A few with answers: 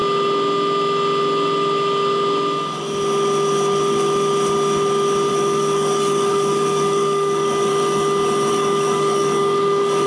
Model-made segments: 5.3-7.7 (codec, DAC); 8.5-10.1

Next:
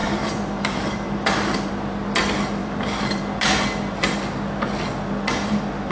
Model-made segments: 0.0-1.7 (vocoder, BigVGAN v2); 2.6-3.2